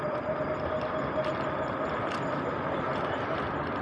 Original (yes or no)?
no